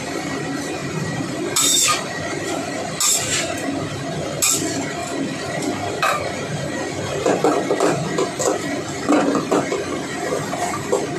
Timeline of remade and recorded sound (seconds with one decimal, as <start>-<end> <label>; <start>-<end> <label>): 0.0-0.8 recorded; 0.8-1.4 remade; 1.4-11.2 recorded